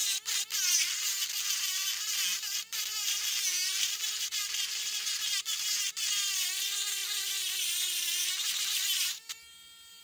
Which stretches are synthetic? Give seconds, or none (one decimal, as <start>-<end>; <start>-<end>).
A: 1.6-5.4; 7.0-10.0